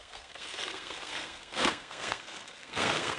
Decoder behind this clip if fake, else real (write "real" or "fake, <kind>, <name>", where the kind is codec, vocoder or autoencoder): fake, codec, SNAC